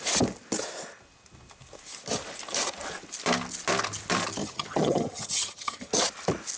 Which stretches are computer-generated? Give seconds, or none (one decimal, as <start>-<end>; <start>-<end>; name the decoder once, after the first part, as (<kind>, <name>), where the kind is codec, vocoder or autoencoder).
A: 4.4-6.0 (vocoder, HiFi-GAN)